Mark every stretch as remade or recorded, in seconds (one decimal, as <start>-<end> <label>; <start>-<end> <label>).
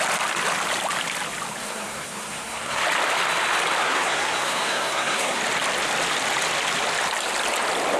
0.0-1.6 recorded; 1.6-2.8 remade; 2.8-3.8 recorded; 3.8-5.4 remade; 5.4-8.0 recorded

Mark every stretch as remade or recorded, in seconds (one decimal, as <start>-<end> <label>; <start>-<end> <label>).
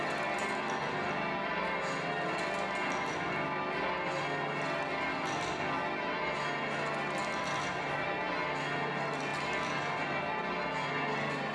0.0-11.5 recorded